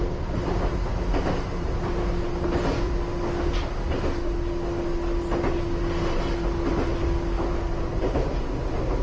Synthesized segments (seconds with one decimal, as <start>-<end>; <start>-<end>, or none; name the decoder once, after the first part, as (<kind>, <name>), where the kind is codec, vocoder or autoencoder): none

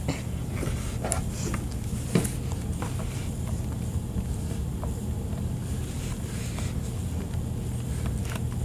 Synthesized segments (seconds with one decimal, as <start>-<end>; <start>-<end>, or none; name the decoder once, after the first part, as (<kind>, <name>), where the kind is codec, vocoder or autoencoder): 1.7-6.5 (vocoder, BigVGAN v2)

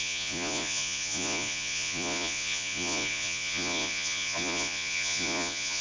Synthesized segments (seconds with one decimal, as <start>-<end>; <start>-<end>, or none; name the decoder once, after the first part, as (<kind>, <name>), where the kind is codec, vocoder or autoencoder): 0.0-5.8 (vocoder, Vocos)

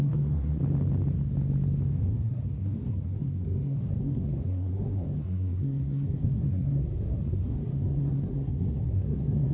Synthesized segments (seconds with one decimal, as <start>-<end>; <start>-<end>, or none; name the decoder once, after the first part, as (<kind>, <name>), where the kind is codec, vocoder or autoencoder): 0.0-0.5 (codec, SNAC); 2.0-9.5